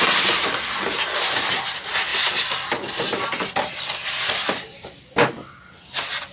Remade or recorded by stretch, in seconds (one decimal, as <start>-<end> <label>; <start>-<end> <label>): 0.0-2.1 recorded; 2.1-5.0 remade; 5.0-6.3 recorded